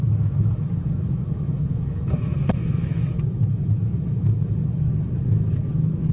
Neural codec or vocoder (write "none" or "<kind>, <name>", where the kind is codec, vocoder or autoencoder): autoencoder, DAC-VAE